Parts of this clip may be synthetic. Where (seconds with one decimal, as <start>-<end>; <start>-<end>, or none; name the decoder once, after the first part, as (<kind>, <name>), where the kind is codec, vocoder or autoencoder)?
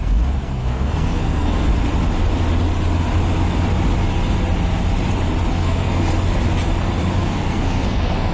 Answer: 0.0-1.7 (codec, SNAC); 5.5-6.0; 7.2-8.3